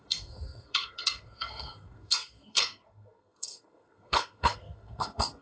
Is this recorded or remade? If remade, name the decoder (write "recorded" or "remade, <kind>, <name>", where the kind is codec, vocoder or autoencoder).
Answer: remade, codec, SNAC